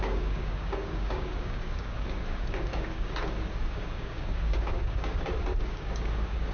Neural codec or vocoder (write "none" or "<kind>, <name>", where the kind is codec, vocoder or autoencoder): codec, DAC